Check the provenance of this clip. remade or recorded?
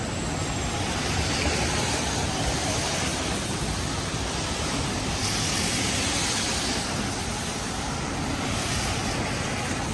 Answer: recorded